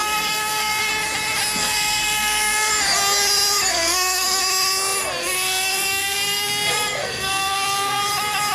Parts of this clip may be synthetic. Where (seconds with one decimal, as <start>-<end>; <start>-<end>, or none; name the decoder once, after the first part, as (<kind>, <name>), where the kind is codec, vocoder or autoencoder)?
0.0-0.9 (codec, SNAC); 1.6-2.7; 3.7-4.4; 5.2-8.0